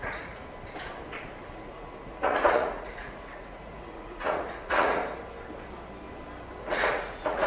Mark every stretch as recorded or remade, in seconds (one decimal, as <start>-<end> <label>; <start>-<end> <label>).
0.0-0.4 remade; 0.4-1.5 recorded; 1.5-5.0 remade; 5.0-6.6 recorded; 6.6-7.5 remade

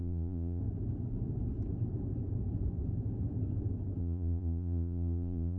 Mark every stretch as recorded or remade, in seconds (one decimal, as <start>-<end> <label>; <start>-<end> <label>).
0.0-0.6 remade; 0.6-4.0 recorded; 4.0-5.6 remade

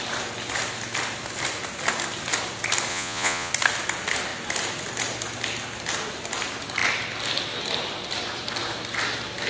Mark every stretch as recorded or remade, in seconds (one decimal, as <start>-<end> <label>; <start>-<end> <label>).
0.0-2.9 recorded; 2.9-3.5 remade; 3.5-9.5 recorded

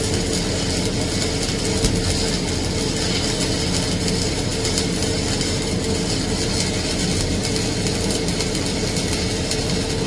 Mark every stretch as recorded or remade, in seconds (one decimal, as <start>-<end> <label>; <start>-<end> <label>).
0.0-10.1 recorded

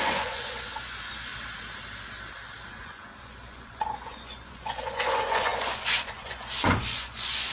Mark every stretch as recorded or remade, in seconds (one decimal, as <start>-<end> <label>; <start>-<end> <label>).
0.0-1.3 remade; 1.3-2.7 recorded; 2.7-7.5 remade

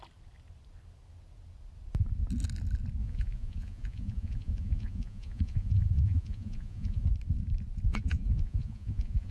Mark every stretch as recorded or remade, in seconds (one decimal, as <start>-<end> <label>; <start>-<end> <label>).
0.0-3.0 recorded; 3.0-7.1 remade; 7.1-7.9 recorded; 7.9-9.3 remade